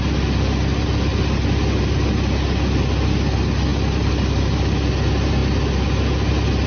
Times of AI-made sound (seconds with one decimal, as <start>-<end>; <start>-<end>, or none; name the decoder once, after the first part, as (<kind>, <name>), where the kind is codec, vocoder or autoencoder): none